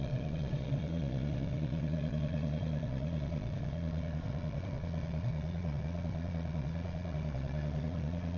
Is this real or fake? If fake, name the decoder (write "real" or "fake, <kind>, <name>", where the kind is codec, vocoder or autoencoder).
fake, vocoder, Vocos